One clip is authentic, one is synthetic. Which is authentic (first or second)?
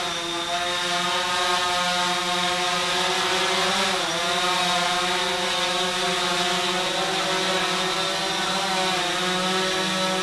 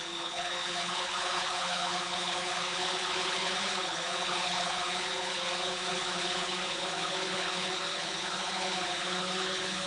first